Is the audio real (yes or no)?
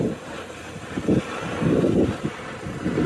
yes